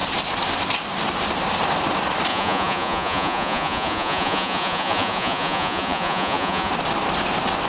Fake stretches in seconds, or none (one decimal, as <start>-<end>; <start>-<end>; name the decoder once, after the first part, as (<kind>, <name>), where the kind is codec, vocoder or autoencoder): 2.3-6.7 (vocoder, Vocos)